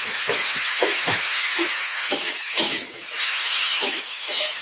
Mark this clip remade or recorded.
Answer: remade